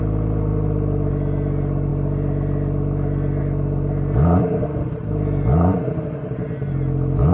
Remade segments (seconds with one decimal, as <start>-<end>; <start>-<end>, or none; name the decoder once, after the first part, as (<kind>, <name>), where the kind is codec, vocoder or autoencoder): none